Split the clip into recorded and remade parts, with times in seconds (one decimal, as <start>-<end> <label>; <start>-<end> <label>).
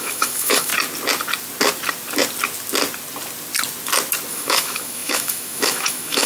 0.0-0.7 remade; 0.7-4.3 recorded; 4.3-6.3 remade